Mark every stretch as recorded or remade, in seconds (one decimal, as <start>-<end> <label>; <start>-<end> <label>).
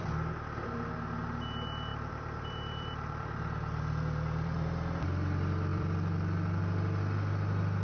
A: 0.0-1.9 recorded; 1.9-5.0 remade; 5.0-5.7 recorded; 5.7-6.6 remade; 6.6-7.8 recorded